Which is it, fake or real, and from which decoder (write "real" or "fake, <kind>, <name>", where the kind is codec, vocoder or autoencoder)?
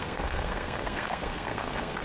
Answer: fake, codec, SNAC